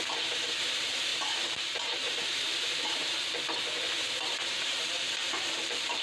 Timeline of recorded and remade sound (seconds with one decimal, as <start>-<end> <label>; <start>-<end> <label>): 0.0-3.0 remade; 3.0-3.9 recorded; 3.9-6.0 remade